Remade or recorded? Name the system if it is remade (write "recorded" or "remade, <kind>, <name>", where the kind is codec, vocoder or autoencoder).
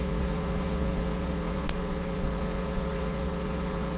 remade, vocoder, Vocos